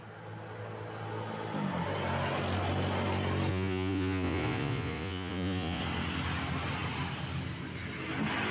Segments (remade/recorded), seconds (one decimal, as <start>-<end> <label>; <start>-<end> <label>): 0.0-3.5 recorded; 3.5-5.8 remade; 5.8-8.5 recorded